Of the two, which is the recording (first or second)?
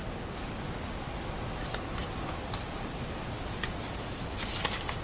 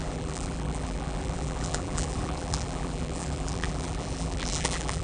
first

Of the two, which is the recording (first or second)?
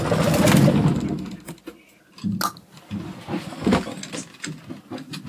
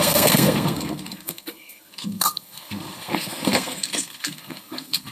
first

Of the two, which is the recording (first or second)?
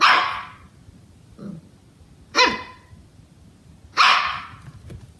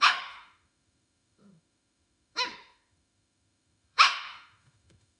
first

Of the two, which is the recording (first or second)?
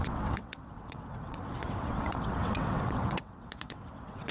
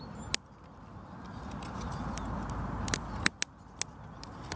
second